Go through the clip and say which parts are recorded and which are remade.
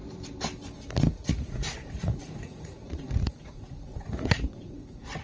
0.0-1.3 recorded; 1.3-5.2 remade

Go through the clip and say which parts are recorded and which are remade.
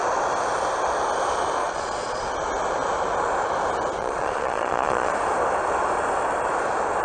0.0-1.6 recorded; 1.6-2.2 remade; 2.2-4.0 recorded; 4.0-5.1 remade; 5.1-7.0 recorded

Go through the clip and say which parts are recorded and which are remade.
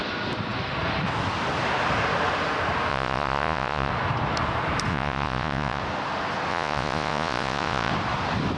0.0-2.9 recorded; 2.9-3.9 remade; 3.9-4.9 recorded; 4.9-5.8 remade; 5.8-6.5 recorded; 6.5-7.9 remade; 7.9-8.6 recorded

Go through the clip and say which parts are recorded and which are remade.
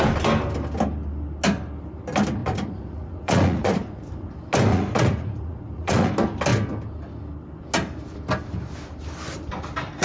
0.0-2.4 recorded; 2.4-4.3 remade; 4.3-4.7 recorded; 4.7-6.1 remade; 6.1-10.0 recorded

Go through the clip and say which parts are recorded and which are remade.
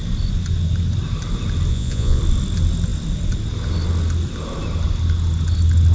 0.0-1.7 recorded; 1.7-2.2 remade; 2.2-5.9 recorded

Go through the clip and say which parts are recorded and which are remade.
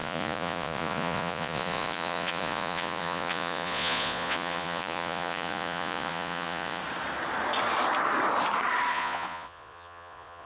0.0-6.8 remade; 6.8-8.9 recorded; 8.9-10.5 remade